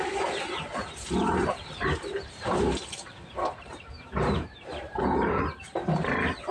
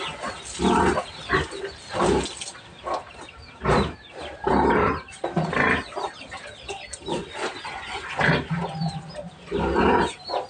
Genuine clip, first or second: second